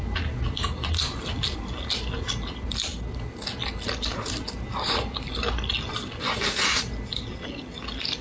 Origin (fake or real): real